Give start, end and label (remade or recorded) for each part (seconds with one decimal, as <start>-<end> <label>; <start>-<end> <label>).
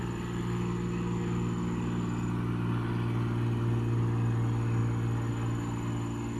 0.0-6.4 recorded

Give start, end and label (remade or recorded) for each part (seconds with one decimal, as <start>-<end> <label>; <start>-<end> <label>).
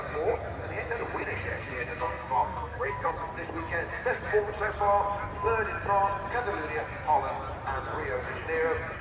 0.0-1.5 recorded; 1.5-3.1 remade; 3.1-9.0 recorded